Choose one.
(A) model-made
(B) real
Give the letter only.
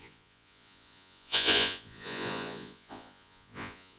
A